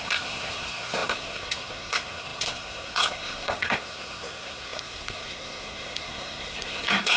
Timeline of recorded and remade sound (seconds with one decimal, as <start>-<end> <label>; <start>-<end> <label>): 0.0-7.2 remade